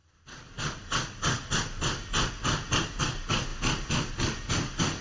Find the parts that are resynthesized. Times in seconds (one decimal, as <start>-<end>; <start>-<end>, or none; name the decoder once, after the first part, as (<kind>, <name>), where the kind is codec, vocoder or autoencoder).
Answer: none